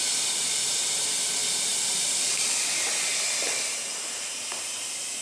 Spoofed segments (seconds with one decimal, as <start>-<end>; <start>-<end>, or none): none